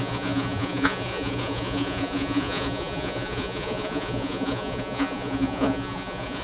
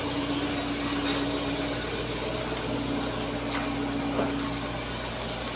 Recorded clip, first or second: second